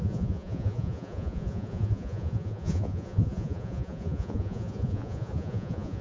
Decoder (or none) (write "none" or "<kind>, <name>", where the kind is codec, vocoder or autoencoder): vocoder, Vocos